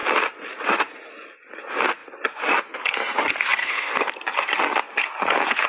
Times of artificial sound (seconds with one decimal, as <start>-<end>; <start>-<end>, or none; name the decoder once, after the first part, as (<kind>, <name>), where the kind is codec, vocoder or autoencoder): 3.6-4.1 (codec, SNAC)

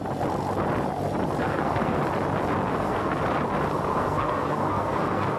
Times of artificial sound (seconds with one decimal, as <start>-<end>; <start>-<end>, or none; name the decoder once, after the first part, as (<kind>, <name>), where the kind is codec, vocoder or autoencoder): 1.4-2.0 (codec, SNAC); 2.7-3.2; 3.9-5.4